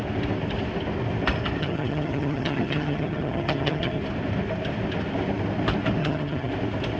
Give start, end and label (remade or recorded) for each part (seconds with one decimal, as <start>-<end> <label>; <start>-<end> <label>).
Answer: 0.0-1.6 recorded; 1.6-4.0 remade; 4.0-6.0 recorded; 6.0-6.5 remade; 6.5-7.0 recorded